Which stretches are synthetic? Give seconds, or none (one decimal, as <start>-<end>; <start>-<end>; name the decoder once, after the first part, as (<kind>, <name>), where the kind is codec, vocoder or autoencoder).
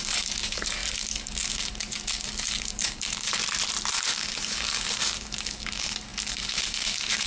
0.0-3.4 (codec, DAC); 3.9-7.3